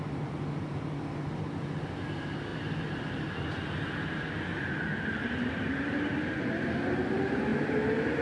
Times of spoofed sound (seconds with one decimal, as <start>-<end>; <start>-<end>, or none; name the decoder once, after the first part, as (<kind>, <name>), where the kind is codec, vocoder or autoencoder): none